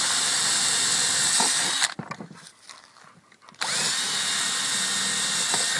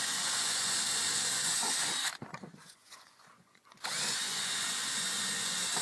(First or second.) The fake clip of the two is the second